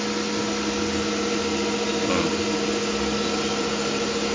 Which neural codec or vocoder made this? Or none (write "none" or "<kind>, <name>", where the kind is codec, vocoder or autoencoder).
none